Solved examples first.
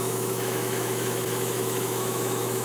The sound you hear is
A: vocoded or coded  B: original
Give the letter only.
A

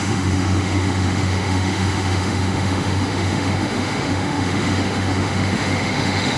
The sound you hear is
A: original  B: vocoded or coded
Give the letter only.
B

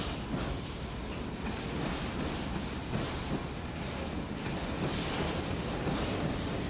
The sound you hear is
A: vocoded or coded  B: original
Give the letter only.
B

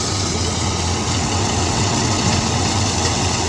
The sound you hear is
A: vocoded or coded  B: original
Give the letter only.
A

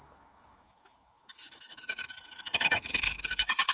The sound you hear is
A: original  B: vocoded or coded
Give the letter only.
B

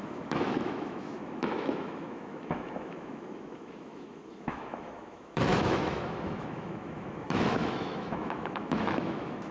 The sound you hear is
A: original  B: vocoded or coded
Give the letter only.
B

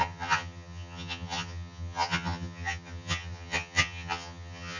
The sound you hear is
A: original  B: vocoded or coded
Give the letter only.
B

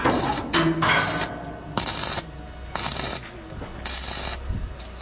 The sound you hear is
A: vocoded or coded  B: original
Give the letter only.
B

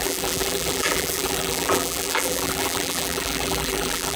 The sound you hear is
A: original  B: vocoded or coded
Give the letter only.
B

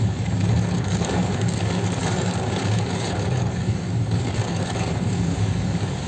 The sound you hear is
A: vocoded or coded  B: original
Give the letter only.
A